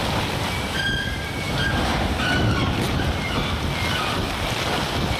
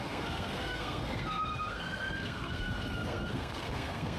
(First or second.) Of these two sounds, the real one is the first